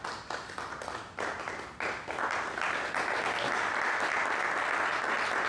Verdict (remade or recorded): recorded